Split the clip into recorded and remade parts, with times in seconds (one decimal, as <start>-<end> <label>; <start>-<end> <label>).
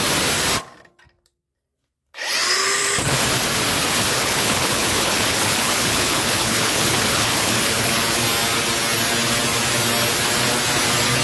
0.0-3.8 recorded; 3.8-7.9 remade; 7.9-11.2 recorded